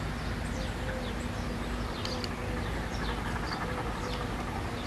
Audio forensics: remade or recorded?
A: recorded